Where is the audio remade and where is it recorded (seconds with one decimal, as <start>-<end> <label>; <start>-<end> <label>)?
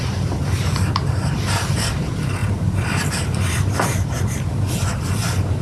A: 0.0-5.6 remade